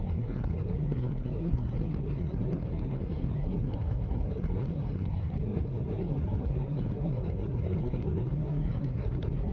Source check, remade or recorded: remade